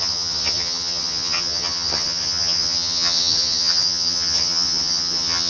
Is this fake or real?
fake